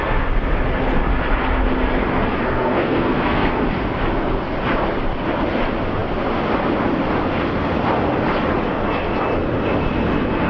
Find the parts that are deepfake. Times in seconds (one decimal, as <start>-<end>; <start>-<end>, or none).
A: 2.4-3.6